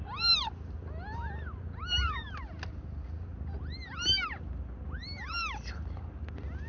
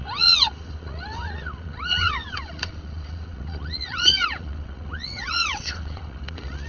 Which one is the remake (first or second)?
second